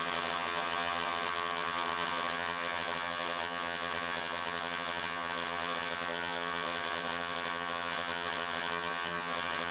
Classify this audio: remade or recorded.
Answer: remade